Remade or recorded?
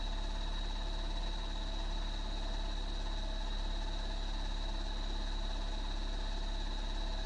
recorded